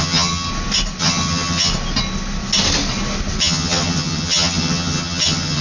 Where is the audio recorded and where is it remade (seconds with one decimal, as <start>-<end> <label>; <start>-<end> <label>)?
0.0-0.5 remade; 0.5-1.0 recorded; 1.0-1.7 remade; 1.7-3.4 recorded; 3.4-5.6 remade